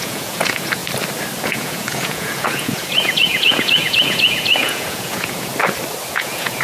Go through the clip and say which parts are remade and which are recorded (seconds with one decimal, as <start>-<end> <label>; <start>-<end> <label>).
0.0-0.8 remade; 0.8-1.4 recorded; 1.4-5.5 remade; 5.5-6.1 recorded; 6.1-6.6 remade